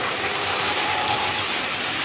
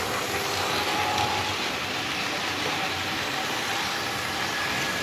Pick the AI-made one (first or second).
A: first